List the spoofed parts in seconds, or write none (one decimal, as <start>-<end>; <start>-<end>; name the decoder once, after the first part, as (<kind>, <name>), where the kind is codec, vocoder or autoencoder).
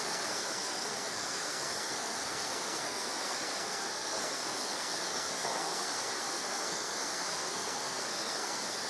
0.0-8.9 (codec, SNAC)